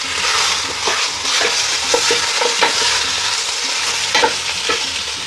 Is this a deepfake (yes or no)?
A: no